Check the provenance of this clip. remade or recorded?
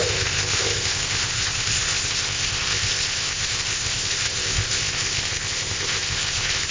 remade